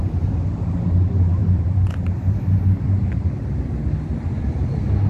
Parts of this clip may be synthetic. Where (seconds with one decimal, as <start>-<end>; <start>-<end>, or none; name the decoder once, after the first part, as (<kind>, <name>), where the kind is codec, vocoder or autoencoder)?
1.4-4.5 (vocoder, BigVGAN v2)